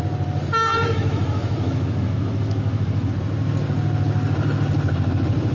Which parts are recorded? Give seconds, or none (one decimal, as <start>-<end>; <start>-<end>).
0.0-0.8; 3.1-5.5